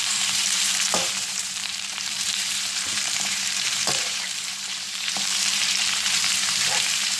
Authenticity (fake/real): fake